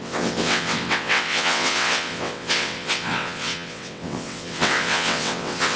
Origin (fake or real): fake